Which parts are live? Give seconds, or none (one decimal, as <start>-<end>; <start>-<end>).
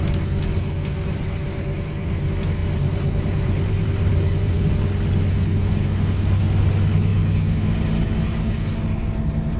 0.0-2.6; 4.7-9.6